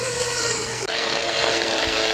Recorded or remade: remade